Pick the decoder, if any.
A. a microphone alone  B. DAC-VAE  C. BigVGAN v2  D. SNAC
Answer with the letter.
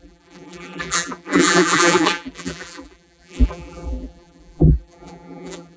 C